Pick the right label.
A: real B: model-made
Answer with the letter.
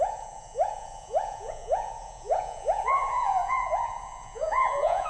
B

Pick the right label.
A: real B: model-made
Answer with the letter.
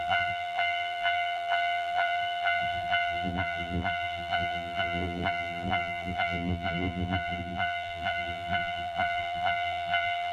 B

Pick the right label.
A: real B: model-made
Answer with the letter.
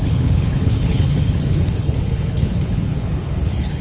B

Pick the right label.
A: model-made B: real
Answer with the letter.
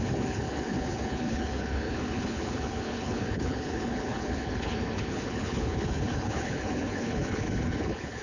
A